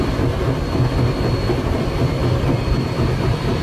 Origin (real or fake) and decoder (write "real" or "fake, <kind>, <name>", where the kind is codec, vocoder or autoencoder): real